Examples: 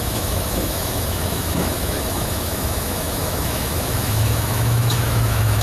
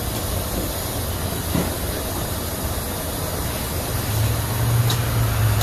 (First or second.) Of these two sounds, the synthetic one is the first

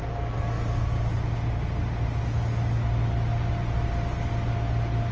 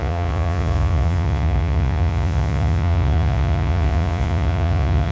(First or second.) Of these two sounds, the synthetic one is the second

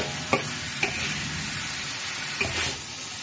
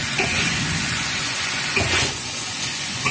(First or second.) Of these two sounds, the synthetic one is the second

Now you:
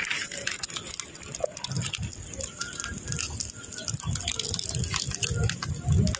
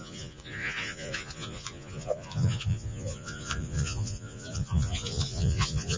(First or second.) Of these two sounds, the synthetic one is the second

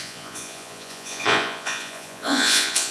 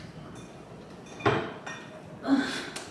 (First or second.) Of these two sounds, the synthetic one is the first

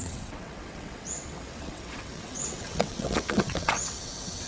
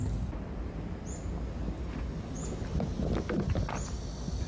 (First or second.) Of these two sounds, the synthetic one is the first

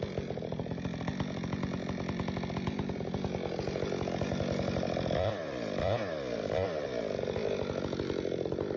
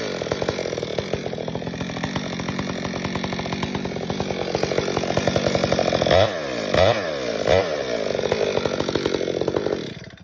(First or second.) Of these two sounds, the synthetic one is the first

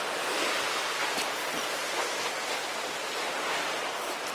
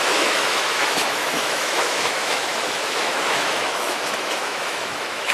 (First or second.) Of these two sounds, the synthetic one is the second